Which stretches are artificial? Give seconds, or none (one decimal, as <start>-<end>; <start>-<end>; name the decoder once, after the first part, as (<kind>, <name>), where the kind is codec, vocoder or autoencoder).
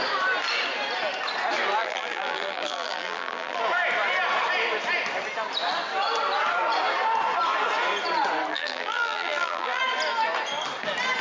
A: 1.8-3.6 (vocoder, BigVGAN v2); 8.5-9.8